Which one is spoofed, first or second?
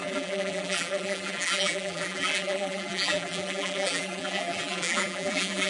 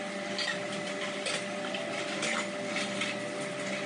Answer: first